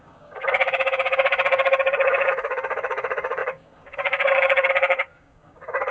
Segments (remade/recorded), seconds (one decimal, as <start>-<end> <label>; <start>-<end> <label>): 0.0-5.9 remade